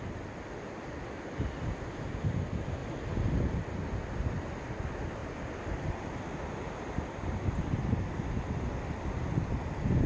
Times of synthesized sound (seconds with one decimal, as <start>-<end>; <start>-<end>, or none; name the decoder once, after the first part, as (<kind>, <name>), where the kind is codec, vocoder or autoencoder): none